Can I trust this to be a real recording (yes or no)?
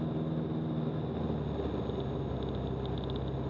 yes